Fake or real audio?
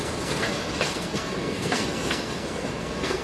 fake